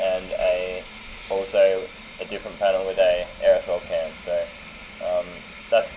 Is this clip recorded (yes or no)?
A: yes